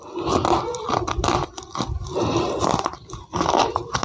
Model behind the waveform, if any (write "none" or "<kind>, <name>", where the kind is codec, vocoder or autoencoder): none